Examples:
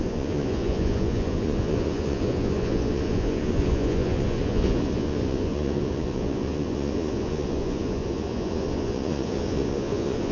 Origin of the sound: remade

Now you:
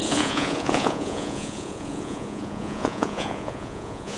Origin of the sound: remade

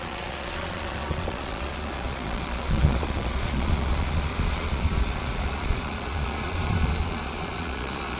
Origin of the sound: remade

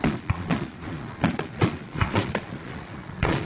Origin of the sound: remade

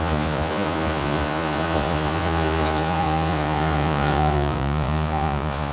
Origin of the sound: remade